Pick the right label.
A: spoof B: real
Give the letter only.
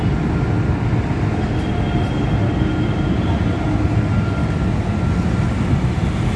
B